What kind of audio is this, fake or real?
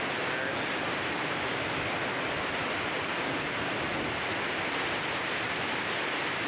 real